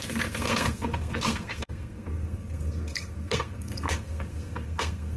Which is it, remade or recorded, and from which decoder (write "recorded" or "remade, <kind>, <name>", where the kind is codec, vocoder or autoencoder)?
remade, codec, SNAC